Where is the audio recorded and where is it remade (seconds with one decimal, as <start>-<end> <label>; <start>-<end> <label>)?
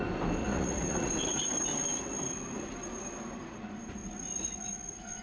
0.0-0.4 recorded; 0.4-1.1 remade; 1.1-4.0 recorded; 4.0-5.2 remade